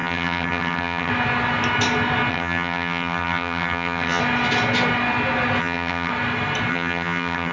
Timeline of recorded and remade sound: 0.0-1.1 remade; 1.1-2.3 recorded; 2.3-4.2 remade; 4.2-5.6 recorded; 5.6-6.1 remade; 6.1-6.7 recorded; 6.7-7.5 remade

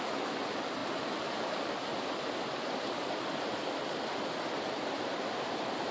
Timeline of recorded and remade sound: 0.0-5.9 recorded

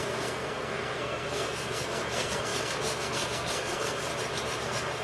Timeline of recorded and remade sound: 0.0-4.1 remade; 4.1-4.6 recorded; 4.6-5.0 remade

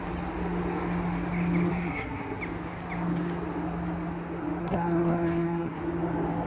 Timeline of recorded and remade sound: 0.0-1.7 recorded; 1.7-2.4 remade; 2.4-4.6 recorded; 4.6-5.8 remade; 5.8-6.5 recorded

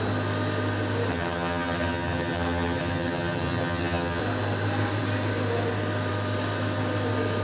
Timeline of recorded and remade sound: 0.0-1.1 recorded; 1.1-4.2 remade; 4.2-7.4 recorded

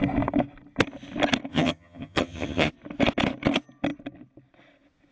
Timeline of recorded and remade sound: 0.0-1.5 recorded; 1.5-2.7 remade; 2.7-5.1 recorded

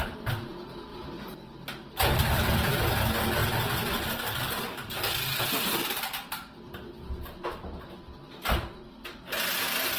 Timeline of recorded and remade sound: 0.0-0.9 recorded; 0.9-2.7 remade; 2.7-3.4 recorded; 3.4-4.6 remade; 4.6-10.0 recorded